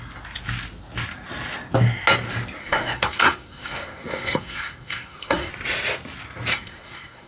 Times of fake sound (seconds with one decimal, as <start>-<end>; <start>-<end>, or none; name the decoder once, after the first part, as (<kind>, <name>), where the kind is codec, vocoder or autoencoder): 2.6-5.5 (codec, SNAC); 6.5-7.3

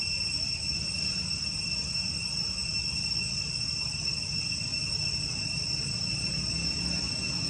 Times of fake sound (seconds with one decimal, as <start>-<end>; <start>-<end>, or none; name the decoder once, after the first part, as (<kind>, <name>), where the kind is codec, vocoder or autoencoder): none

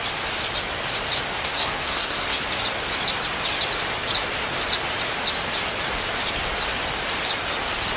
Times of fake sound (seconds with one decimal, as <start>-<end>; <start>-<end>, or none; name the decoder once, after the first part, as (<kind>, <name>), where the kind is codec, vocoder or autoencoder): 1.4-2.4 (codec, SNAC)

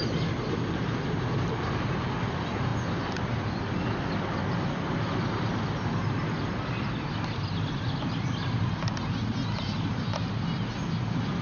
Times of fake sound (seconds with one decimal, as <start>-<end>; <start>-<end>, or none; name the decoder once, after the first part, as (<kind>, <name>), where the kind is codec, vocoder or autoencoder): none

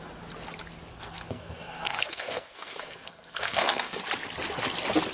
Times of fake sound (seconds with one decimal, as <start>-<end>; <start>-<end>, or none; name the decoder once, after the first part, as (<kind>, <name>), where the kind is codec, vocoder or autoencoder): 0.9-4.0 (codec, SNAC)